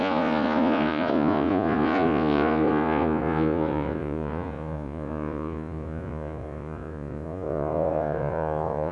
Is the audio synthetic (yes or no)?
yes